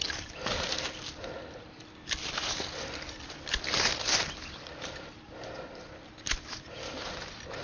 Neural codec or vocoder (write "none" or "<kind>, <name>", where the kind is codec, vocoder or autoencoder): none